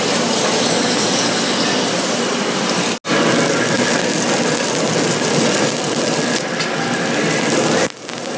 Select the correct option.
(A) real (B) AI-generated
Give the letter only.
A